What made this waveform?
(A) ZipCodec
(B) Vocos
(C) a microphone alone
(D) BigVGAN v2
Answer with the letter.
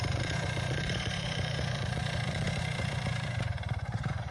B